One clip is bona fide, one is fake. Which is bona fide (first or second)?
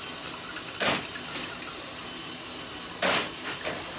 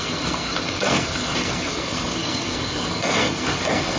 first